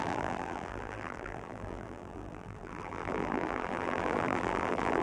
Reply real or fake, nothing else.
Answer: fake